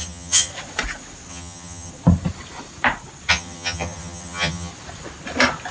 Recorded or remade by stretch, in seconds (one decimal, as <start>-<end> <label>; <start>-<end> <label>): 0.0-0.5 remade; 0.5-1.3 recorded; 1.3-1.9 remade; 1.9-3.3 recorded; 3.3-4.7 remade; 4.7-5.7 recorded